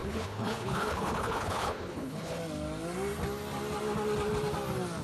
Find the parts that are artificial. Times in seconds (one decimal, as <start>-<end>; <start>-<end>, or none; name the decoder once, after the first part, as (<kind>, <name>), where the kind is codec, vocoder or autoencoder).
0.0-2.4 (codec, HILCodec)